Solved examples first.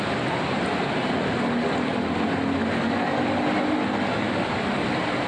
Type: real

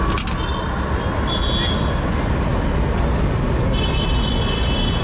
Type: real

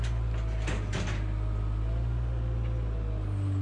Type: real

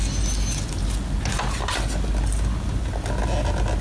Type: real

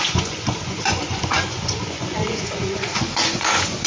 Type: fake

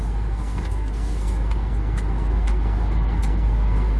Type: fake